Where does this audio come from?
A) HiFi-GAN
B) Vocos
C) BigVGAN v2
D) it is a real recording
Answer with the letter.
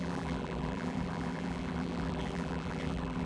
C